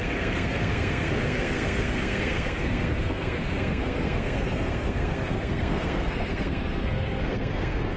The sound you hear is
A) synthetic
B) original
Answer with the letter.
A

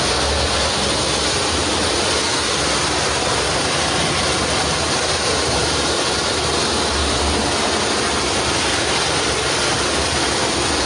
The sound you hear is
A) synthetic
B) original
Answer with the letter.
B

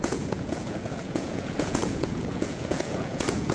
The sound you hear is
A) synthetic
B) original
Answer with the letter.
A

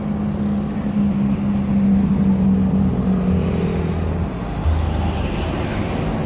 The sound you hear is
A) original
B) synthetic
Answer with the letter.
A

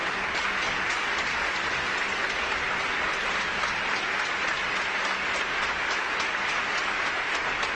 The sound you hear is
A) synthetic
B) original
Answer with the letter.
B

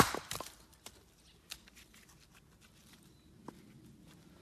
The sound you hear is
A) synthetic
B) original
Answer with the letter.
B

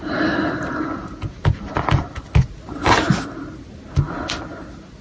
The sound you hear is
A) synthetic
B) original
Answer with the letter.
B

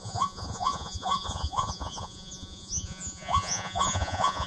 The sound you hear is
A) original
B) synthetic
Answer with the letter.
B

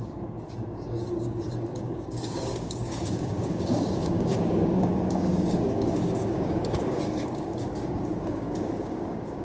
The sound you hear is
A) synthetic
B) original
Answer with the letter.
A